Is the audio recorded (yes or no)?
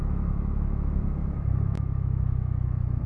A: no